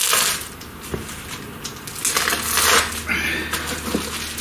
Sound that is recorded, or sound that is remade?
recorded